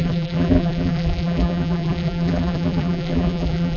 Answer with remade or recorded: remade